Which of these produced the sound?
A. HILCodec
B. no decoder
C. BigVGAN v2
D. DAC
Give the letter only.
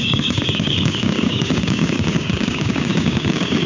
D